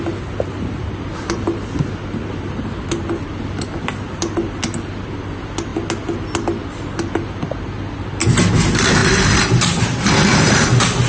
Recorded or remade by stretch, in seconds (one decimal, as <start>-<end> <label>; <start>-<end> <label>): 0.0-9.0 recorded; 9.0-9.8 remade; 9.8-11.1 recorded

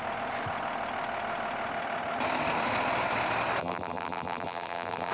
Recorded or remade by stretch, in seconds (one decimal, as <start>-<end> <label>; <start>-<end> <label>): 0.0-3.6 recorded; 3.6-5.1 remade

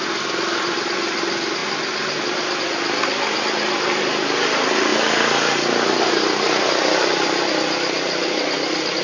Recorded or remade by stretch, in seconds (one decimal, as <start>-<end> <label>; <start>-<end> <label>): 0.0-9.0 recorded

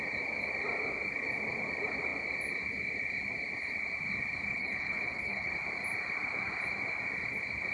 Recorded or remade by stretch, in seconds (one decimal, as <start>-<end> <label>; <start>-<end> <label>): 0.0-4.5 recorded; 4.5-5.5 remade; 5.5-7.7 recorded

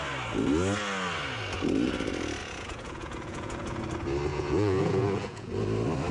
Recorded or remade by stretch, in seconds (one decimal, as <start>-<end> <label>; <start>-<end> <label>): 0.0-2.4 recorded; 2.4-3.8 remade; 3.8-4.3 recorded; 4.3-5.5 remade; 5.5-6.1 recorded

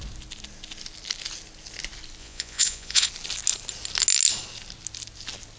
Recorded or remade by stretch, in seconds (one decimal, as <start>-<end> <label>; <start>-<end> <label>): 0.0-2.2 recorded; 2.2-3.1 remade; 3.1-5.6 recorded

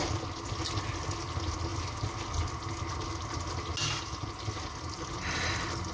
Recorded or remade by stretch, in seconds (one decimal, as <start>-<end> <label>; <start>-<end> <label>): 0.0-5.9 recorded